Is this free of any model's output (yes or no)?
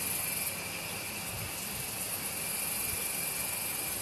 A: yes